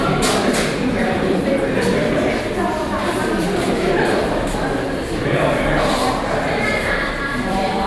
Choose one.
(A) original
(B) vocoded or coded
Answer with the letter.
B